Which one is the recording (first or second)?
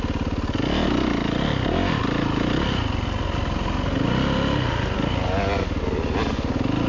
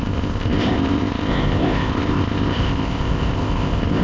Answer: first